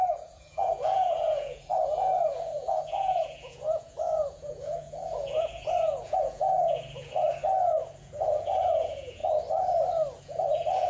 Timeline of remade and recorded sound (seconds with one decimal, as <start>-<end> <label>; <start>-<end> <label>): 0.0-7.4 remade; 7.4-8.0 recorded; 8.0-9.2 remade; 9.2-10.2 recorded; 10.2-10.9 remade